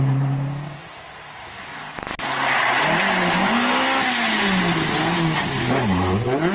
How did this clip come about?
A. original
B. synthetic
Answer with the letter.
A